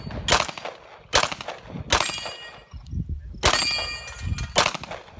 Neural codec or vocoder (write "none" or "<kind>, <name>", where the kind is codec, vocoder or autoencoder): none